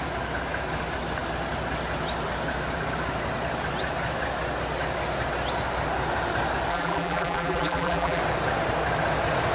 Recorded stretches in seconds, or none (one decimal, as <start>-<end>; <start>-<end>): 0.0-6.7; 8.2-9.5